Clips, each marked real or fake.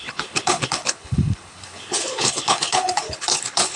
fake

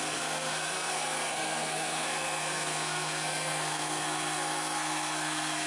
fake